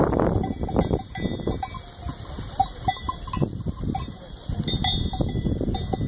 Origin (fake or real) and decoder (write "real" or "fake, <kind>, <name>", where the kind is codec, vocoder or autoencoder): real